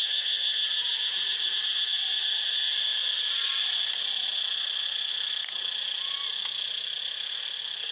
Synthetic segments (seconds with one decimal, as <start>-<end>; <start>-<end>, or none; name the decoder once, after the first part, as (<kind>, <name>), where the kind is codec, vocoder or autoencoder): none